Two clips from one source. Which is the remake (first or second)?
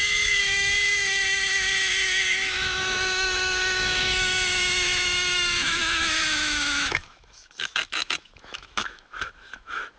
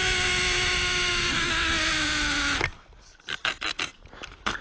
first